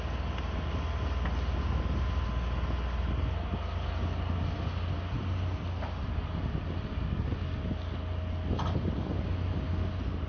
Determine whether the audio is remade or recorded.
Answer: recorded